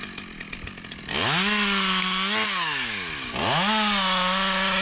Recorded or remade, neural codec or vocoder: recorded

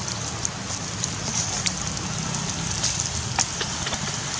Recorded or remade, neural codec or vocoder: recorded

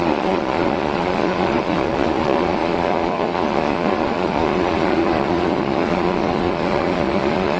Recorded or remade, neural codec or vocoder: remade, vocoder, Vocos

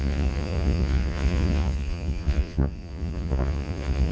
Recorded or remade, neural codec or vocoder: remade, vocoder, Vocos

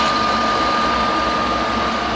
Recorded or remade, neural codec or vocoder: recorded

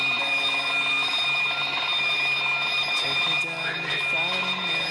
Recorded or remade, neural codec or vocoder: recorded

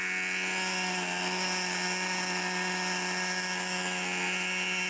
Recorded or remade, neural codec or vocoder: recorded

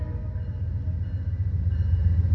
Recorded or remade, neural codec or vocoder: recorded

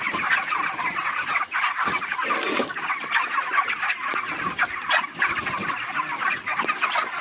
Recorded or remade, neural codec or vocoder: recorded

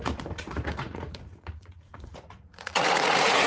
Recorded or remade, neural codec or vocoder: remade, vocoder, Vocos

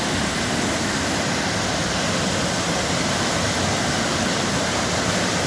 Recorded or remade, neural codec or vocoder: recorded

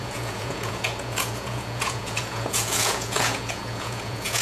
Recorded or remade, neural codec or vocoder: remade, vocoder, Vocos